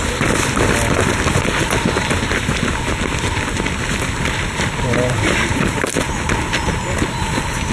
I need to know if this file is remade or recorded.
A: recorded